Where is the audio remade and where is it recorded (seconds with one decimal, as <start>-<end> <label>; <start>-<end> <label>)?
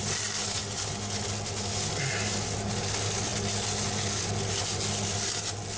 0.0-5.8 recorded